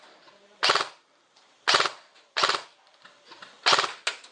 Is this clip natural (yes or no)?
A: yes